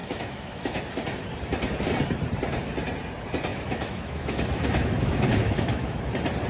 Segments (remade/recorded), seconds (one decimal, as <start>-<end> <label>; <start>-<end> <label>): 0.0-0.8 remade; 0.8-3.5 recorded; 3.5-6.0 remade; 6.0-6.5 recorded